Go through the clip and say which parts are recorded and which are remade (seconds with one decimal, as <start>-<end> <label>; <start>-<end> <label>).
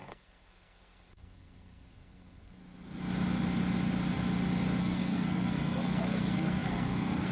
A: 0.0-2.6 remade; 2.6-4.8 recorded; 4.8-7.3 remade